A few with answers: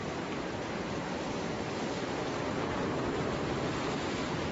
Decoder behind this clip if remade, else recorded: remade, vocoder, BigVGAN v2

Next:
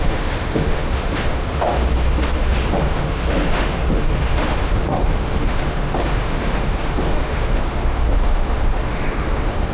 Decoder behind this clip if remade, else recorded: remade, autoencoder, DAC-VAE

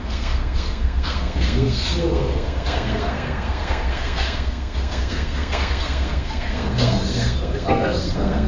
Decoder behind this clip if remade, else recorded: remade, codec, SNAC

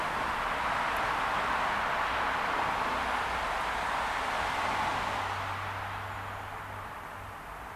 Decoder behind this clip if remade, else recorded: recorded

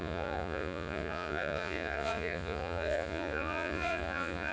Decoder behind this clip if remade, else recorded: remade, vocoder, Vocos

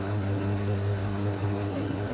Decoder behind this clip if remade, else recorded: remade, codec, SNAC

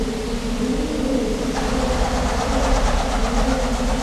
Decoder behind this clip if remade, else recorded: recorded